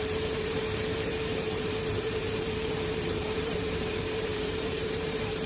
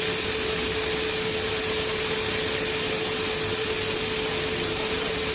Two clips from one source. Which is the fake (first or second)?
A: first